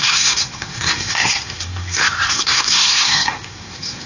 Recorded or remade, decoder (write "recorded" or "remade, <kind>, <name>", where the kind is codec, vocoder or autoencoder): remade, codec, SNAC